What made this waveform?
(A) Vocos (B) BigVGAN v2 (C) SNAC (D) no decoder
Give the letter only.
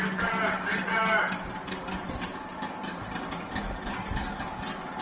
D